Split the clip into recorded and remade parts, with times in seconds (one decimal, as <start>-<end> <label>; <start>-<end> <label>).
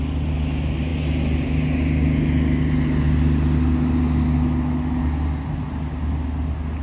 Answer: 0.0-6.8 recorded